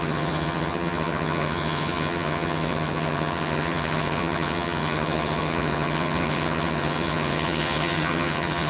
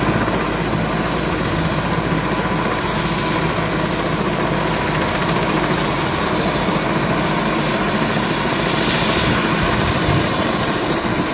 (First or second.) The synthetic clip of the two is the first